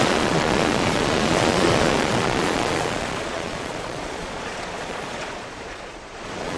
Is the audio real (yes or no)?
no